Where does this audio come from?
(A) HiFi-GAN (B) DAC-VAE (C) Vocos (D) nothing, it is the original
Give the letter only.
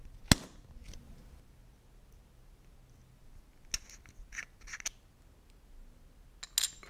D